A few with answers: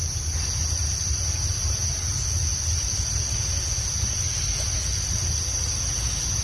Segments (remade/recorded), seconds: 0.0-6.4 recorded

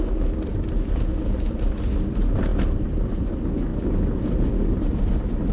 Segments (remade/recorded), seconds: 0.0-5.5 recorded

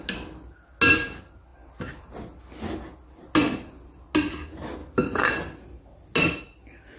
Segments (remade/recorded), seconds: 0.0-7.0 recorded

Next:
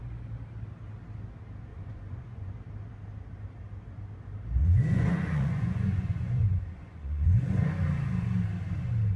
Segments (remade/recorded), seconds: 0.0-1.7 recorded; 1.7-2.5 remade; 2.5-4.6 recorded; 4.6-7.7 remade; 7.7-9.2 recorded

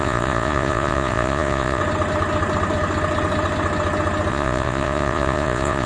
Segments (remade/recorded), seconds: 0.0-1.8 remade; 1.8-4.3 recorded; 4.3-5.9 remade